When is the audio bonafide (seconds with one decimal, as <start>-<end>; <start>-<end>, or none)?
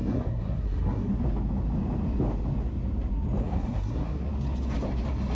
1.1-3.4; 4.3-5.3